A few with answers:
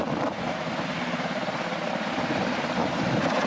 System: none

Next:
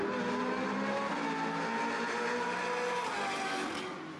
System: none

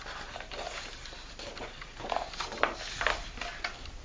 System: none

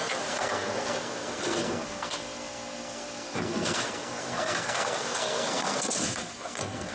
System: codec, SNAC